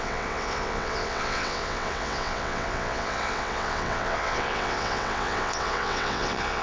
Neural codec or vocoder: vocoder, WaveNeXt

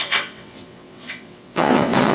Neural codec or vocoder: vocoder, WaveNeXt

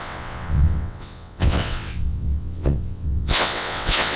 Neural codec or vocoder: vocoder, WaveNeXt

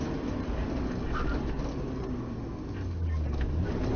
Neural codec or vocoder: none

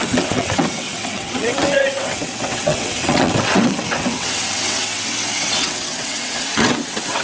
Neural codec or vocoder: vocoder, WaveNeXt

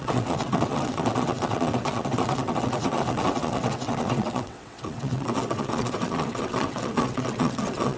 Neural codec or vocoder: vocoder, WaveNeXt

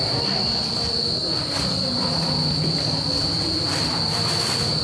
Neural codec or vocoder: none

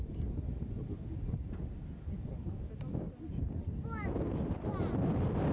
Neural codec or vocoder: none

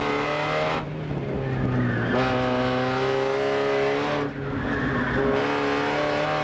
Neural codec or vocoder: none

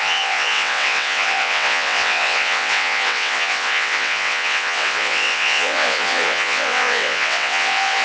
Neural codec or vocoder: vocoder, WaveNeXt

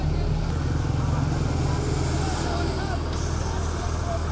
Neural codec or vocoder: none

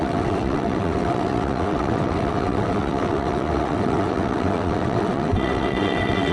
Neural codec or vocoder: vocoder, WaveNeXt